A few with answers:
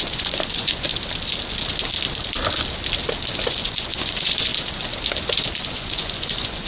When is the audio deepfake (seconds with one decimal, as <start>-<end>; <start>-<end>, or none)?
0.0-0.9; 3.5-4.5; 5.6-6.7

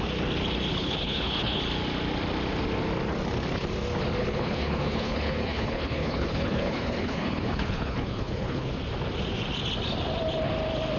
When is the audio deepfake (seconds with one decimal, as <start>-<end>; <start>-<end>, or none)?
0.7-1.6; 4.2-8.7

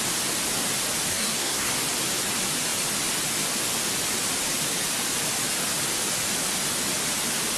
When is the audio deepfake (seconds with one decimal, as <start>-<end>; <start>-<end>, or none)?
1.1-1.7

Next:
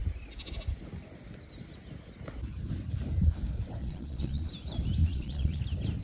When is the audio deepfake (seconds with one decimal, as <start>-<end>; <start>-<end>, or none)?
3.8-4.5; 5.0-5.6

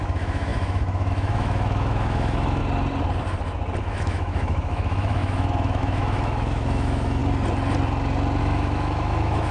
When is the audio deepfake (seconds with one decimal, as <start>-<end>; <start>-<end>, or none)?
0.0-2.6; 3.8-7.2; 8.4-9.5

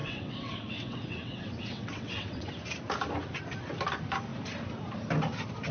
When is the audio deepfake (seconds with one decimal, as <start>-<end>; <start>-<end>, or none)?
0.0-2.5